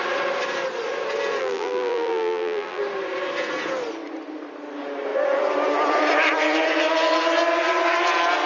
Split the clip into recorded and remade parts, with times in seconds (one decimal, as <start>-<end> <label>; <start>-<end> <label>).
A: 0.0-1.4 recorded; 1.4-2.8 remade; 2.8-8.5 recorded